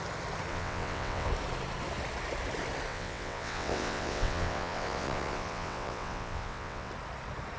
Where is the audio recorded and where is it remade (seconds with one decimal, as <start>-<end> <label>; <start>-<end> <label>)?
0.0-0.5 recorded; 0.5-1.3 remade; 1.3-2.9 recorded; 2.9-6.9 remade; 6.9-7.6 recorded